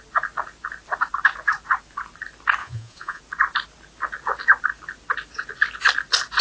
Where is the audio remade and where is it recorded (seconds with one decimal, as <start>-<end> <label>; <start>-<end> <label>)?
0.0-2.6 recorded; 2.6-3.2 remade; 3.2-6.4 recorded